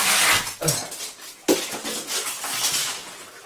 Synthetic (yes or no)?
no